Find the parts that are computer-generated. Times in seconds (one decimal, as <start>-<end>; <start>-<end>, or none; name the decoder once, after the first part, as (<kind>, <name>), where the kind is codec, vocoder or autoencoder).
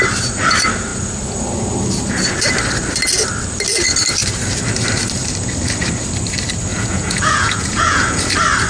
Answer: 6.7-8.2 (vocoder, Vocos)